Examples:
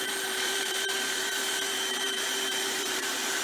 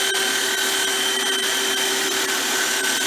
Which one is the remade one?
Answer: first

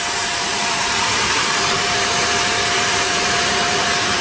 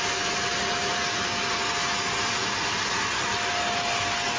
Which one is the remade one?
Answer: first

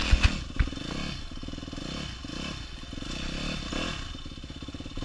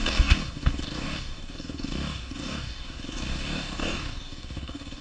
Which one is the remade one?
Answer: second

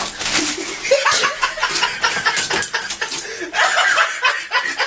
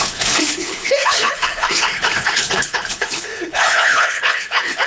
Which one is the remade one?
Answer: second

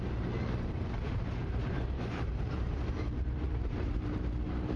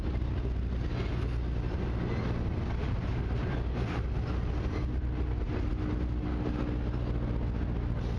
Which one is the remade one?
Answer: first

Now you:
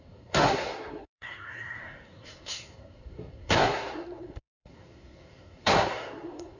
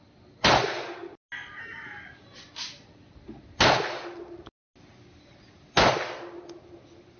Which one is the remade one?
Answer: first